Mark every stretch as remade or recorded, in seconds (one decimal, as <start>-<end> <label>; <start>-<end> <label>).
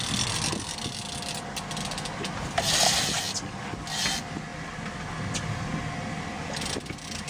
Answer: 0.0-7.3 recorded